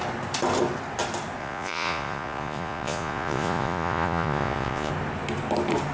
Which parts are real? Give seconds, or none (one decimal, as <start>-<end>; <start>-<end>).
0.0-1.4; 4.9-5.9